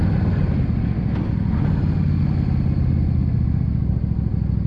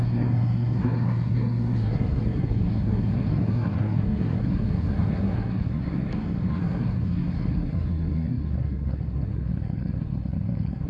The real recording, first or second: first